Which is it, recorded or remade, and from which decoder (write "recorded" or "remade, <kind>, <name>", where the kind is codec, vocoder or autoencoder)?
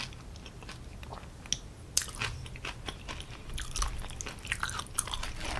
recorded